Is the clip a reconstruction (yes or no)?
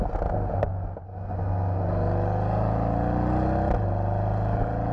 no